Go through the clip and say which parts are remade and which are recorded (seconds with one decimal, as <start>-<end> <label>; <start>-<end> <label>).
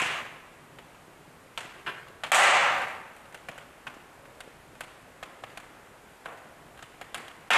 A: 0.0-7.6 recorded